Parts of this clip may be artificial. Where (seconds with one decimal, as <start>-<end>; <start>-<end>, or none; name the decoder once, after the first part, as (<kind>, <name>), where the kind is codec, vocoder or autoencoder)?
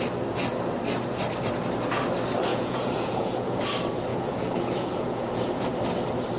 2.5-3.6 (vocoder, Vocos); 4.1-5.7